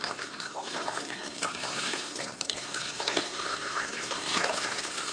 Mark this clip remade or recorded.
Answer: remade